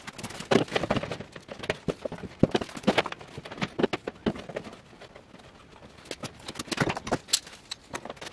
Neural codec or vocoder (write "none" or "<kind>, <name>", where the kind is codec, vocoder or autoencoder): none